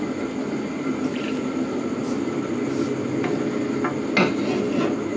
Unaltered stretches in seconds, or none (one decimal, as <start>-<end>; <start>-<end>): 0.0-5.2